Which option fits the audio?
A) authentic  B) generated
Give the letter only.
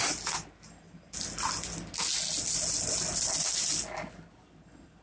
A